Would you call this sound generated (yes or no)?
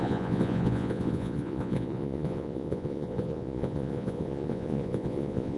yes